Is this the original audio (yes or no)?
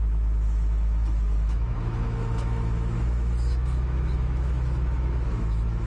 no